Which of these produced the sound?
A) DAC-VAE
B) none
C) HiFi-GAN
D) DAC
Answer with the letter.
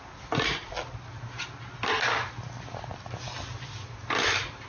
B